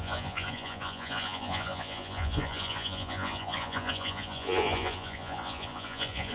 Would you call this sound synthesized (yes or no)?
yes